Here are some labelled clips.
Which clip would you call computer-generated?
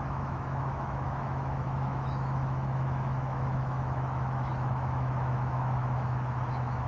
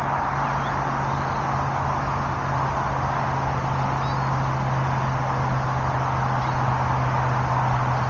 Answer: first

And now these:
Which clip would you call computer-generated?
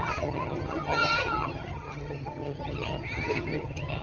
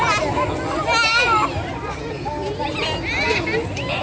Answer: first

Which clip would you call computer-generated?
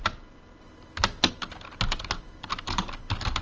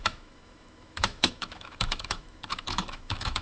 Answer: second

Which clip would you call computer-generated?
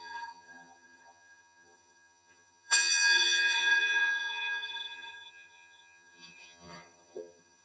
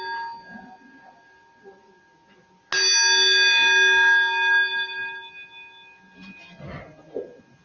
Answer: first